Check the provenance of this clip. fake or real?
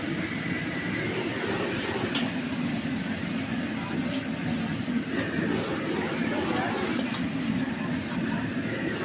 real